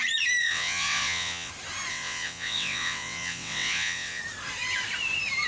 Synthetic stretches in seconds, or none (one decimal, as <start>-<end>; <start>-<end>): 0.4-1.5; 1.9-4.2